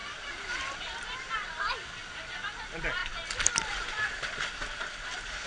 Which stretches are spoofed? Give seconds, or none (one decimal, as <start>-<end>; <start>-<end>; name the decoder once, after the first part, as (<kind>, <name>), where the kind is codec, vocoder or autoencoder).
0.0-1.3 (vocoder, BigVGAN v2)